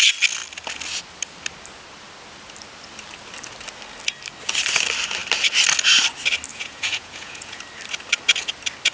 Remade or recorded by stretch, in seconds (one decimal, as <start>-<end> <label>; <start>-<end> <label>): 0.0-6.5 recorded; 6.5-7.6 remade; 7.6-8.9 recorded